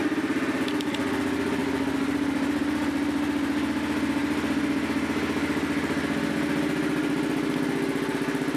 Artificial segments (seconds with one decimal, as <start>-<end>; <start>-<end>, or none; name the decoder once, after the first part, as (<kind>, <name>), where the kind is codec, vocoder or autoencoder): none